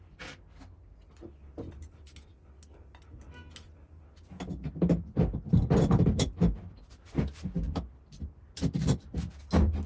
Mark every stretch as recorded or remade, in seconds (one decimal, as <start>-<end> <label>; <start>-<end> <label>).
0.0-9.9 recorded